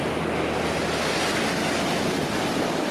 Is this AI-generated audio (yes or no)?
no